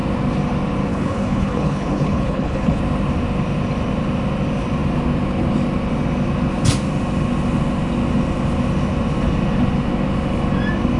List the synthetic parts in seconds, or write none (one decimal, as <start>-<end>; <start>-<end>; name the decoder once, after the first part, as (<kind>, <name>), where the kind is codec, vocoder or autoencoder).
0.9-2.8 (codec, HILCodec)